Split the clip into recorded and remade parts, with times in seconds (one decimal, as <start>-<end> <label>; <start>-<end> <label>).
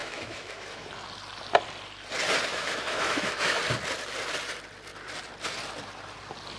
0.0-0.9 remade; 0.9-2.5 recorded; 2.5-3.6 remade; 3.6-6.6 recorded